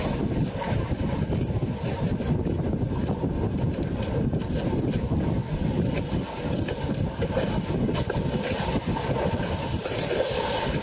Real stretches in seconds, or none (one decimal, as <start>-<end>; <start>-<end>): 0.0-10.8